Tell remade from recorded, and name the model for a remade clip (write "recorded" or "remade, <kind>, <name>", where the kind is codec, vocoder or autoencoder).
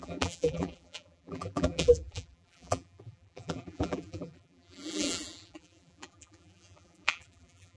remade, vocoder, BigVGAN v2